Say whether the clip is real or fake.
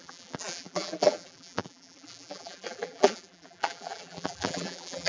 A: fake